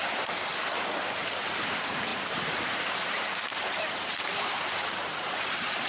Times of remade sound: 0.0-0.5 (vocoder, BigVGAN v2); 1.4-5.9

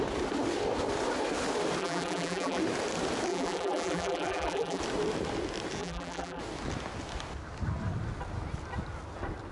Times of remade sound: 1.8-2.6 (vocoder, BigVGAN v2); 3.3-4.8; 5.8-6.4

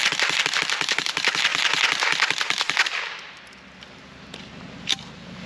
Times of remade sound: 0.0-1.5 (vocoder, BigVGAN v2); 4.8-5.5

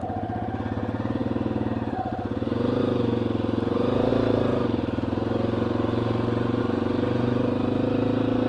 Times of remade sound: none